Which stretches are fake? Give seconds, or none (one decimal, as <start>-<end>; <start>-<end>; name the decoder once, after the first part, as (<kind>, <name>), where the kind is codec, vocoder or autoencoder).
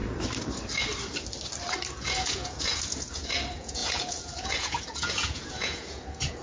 1.9-6.4 (vocoder, Vocos)